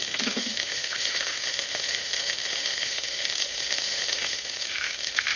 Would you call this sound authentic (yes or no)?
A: no